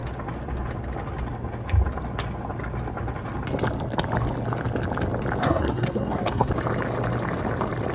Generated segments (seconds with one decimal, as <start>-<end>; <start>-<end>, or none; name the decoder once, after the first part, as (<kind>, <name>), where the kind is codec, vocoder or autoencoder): 5.4-6.5 (codec, SNAC)